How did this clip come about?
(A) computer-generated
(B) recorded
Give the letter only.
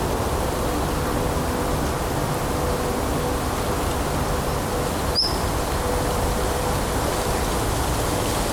B